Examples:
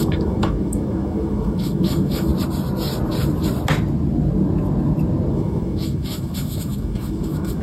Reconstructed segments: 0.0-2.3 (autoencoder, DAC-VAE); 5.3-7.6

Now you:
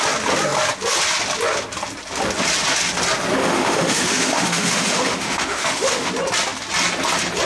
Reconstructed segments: 3.4-6.1 (autoencoder, DAC-VAE)

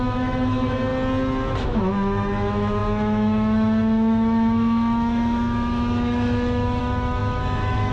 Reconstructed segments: 0.0-0.9 (autoencoder, DAC-VAE); 1.6-7.9

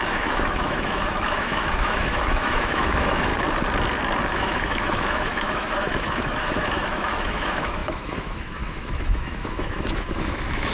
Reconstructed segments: 0.0-3.3 (autoencoder, DAC-VAE); 4.3-10.7

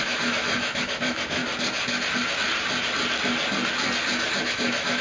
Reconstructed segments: 0.0-1.4 (autoencoder, DAC-VAE); 4.4-5.0

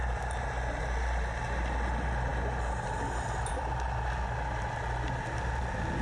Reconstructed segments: none

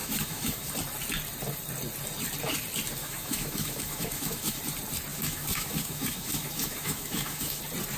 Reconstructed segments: 0.0-0.7 (autoencoder, DAC-VAE); 3.0-4.6; 5.1-7.6